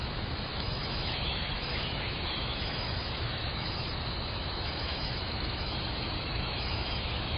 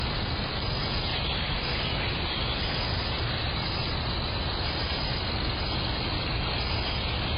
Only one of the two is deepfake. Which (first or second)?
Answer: first